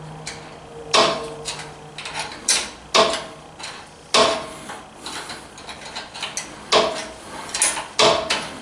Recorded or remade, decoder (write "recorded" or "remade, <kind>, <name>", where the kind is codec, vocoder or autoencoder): recorded